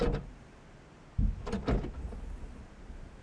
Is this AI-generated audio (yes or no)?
no